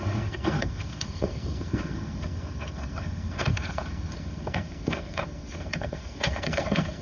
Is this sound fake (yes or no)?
yes